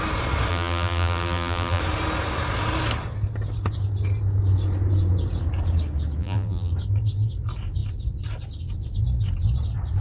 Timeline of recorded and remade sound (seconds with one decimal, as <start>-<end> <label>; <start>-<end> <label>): 0.0-0.5 recorded; 0.5-1.8 remade; 1.8-6.2 recorded; 6.2-6.7 remade; 6.7-10.0 recorded

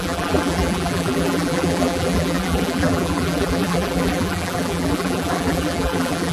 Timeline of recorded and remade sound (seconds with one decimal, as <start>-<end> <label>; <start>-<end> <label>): 0.0-6.3 remade

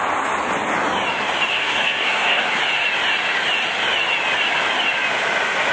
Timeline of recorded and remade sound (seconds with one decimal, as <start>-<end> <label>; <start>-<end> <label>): 0.0-1.5 recorded; 1.5-2.6 remade; 2.6-5.7 recorded

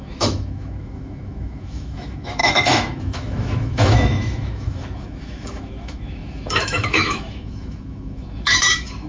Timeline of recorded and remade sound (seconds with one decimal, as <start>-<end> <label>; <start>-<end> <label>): 0.0-9.1 remade

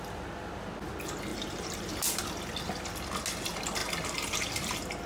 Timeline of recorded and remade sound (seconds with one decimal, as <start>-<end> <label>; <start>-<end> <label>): 0.0-1.3 recorded; 1.3-2.2 remade; 2.2-5.1 recorded

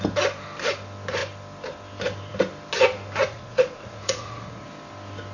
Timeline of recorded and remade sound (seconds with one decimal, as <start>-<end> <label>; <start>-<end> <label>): 0.0-3.2 recorded; 3.2-4.7 remade; 4.7-5.3 recorded